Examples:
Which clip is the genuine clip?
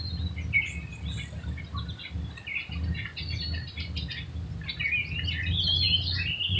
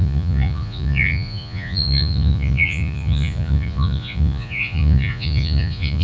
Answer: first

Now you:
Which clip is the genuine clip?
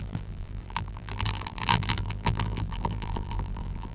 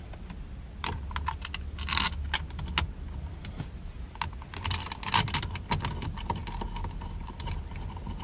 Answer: second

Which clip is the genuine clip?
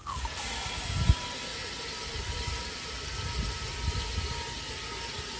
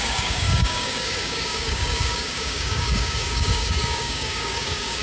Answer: first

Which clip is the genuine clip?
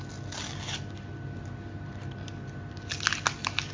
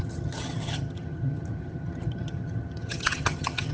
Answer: first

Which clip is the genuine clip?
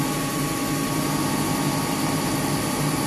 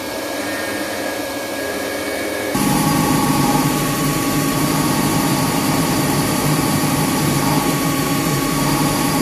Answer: first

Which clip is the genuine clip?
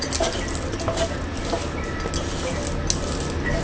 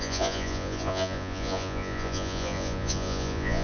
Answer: first